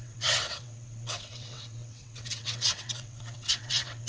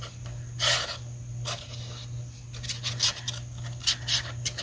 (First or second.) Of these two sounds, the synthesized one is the first